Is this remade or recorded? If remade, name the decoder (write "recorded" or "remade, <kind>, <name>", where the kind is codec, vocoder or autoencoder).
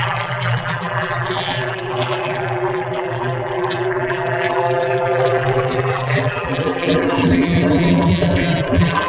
remade, vocoder, BigVGAN v2